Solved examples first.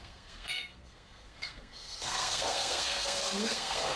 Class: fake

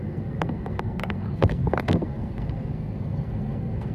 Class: fake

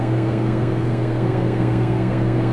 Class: fake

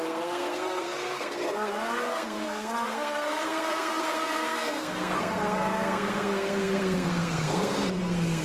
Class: fake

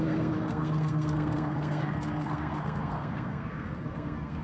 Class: fake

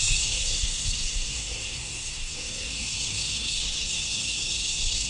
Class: fake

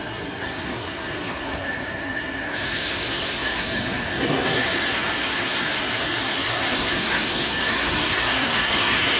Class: fake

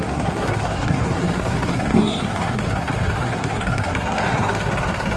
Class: fake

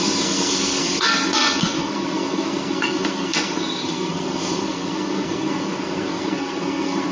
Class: fake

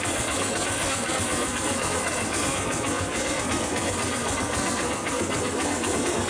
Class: fake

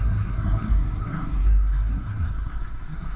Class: fake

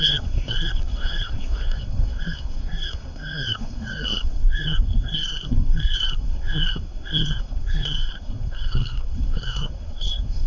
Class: fake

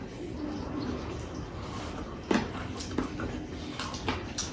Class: real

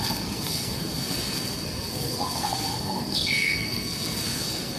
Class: fake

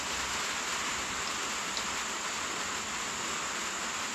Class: real